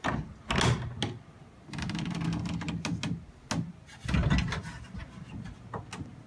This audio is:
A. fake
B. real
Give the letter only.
B